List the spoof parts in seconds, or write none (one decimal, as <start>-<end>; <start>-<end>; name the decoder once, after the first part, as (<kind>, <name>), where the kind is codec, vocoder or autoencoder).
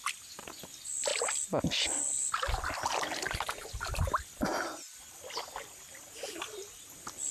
none